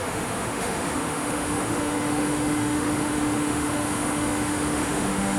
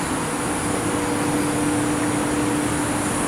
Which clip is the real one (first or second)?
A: second